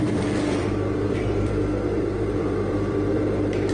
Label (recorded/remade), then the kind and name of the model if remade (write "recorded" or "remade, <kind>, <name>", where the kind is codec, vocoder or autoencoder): remade, vocoder, BigVGAN v2